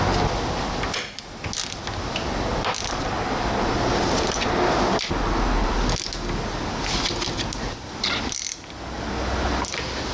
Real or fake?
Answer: real